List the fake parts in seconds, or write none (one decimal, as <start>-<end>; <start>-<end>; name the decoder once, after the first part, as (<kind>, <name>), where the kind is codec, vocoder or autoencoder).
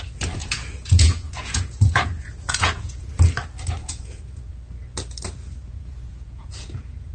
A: 0.4-3.1 (vocoder, Vocos); 3.8-4.4; 5.6-7.1